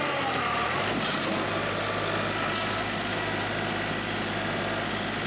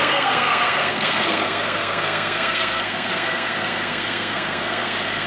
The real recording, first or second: first